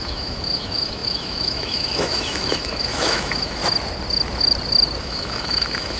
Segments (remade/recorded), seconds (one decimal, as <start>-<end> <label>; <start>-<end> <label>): 0.0-3.6 remade; 3.6-5.0 recorded; 5.0-6.0 remade